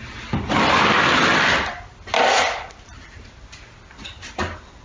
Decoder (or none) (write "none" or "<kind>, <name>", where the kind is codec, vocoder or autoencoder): vocoder, BigVGAN v2